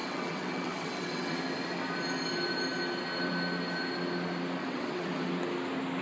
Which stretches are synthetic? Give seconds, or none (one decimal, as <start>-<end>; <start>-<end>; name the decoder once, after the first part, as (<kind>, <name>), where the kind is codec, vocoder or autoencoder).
0.0-1.4 (vocoder, WaveNeXt); 4.6-5.3

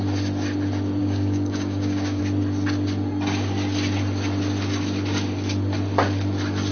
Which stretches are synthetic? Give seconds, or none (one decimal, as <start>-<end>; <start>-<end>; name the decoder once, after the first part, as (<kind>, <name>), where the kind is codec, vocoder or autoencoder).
1.0-2.2 (codec, DAC)

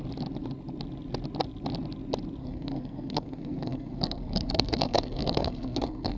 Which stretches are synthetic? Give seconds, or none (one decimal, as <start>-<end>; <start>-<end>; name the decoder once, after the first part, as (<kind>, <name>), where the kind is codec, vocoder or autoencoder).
2.4-6.2 (codec, SNAC)

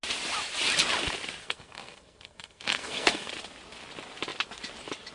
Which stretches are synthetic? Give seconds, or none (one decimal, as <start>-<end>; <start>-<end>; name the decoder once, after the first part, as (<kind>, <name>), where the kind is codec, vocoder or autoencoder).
1.4-3.3 (codec, SNAC)

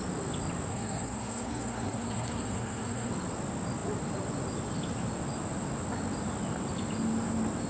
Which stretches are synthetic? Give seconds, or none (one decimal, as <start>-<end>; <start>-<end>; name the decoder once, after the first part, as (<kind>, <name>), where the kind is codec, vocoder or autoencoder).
0.7-3.1 (codec, SNAC)

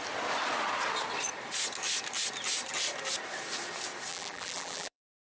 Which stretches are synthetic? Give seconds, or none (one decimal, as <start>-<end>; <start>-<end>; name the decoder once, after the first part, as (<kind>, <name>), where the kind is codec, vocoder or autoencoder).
4.1-5.3 (vocoder, BigVGAN v2)

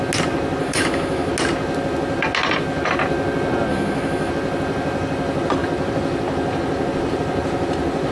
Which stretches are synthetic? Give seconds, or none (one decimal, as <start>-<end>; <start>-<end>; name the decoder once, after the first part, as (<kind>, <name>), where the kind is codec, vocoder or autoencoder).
0.6-1.3 (autoencoder, DAC-VAE); 3.7-4.3

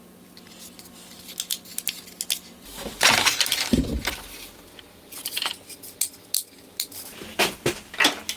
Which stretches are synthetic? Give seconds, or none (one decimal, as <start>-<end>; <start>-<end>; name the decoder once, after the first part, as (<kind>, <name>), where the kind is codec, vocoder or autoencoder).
none